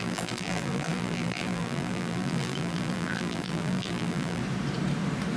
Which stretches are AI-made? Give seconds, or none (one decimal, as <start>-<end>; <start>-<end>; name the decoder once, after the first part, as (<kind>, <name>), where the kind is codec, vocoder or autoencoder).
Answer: 0.0-4.4 (vocoder, BigVGAN v2)